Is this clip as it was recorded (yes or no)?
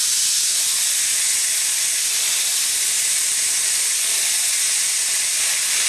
yes